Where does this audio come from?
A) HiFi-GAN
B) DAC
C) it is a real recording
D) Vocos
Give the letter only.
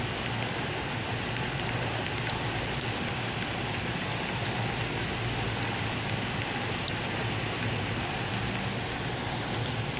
C